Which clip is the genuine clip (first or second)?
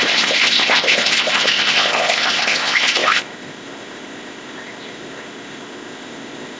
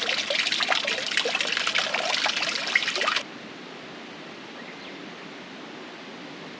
second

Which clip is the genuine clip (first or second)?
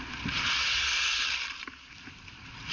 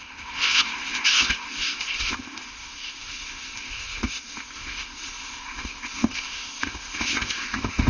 first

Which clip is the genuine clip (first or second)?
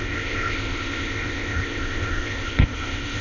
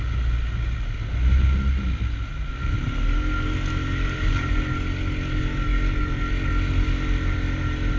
second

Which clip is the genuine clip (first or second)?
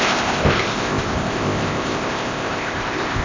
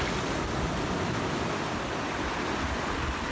second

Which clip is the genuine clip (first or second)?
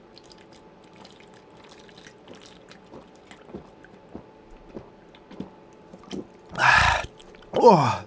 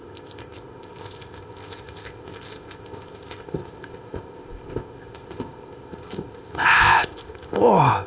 first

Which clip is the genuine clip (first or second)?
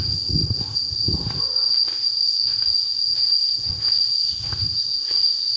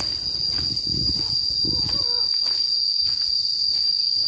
second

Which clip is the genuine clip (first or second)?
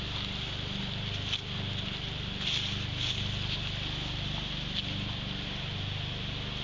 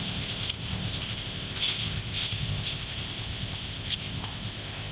first